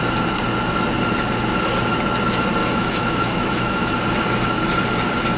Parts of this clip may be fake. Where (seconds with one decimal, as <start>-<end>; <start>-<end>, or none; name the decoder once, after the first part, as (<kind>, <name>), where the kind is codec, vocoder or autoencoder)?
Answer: 2.6-3.9 (autoencoder, DAC-VAE)